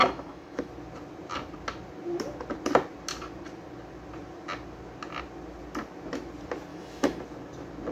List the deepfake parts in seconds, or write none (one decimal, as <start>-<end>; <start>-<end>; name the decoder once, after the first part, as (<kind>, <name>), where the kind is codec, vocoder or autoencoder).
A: 0.0-0.7 (autoencoder, DAC-VAE); 6.7-7.2